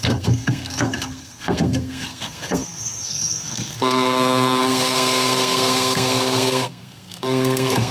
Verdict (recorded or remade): remade